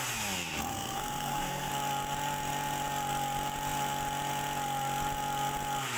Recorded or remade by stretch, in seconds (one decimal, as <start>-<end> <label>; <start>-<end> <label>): 0.0-0.7 recorded; 0.7-1.7 remade; 1.7-6.0 recorded